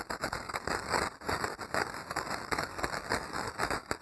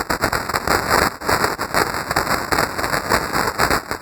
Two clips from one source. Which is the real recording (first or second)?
second